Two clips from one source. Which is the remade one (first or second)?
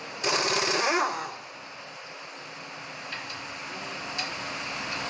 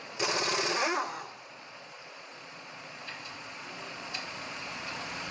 second